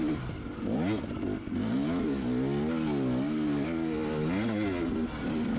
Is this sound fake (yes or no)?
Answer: no